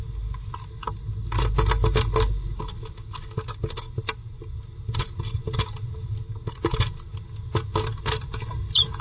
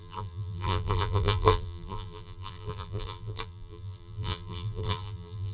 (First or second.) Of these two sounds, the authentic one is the first